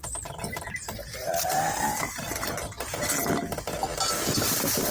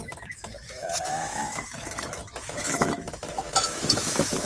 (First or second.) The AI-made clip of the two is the second